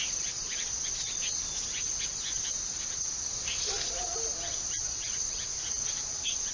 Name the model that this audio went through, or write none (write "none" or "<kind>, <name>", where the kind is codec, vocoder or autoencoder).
none